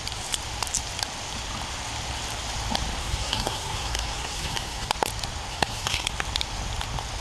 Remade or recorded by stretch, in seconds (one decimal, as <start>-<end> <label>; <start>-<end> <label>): 0.0-3.0 recorded; 3.0-4.9 remade; 4.9-5.5 recorded; 5.5-6.1 remade; 6.1-7.2 recorded